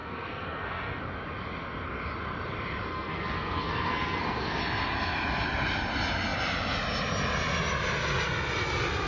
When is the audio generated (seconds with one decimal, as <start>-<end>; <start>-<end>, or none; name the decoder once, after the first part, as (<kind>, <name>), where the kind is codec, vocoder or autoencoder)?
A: 0.0-1.0 (codec, SNAC); 2.9-4.6